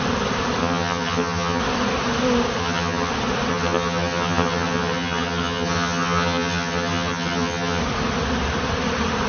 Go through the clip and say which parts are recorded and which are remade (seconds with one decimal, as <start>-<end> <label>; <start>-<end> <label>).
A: 0.0-0.6 recorded; 0.6-1.6 remade; 1.6-2.6 recorded; 2.6-3.1 remade; 3.1-3.5 recorded; 3.5-7.8 remade; 7.8-9.3 recorded